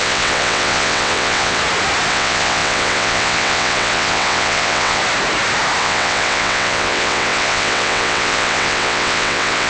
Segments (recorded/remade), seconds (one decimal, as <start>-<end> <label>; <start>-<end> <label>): 0.0-1.6 remade; 1.6-2.1 recorded; 2.1-5.0 remade; 5.0-5.8 recorded; 5.8-9.7 remade